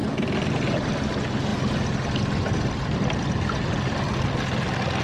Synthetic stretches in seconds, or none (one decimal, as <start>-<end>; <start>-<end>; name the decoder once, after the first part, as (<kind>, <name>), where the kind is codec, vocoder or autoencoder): none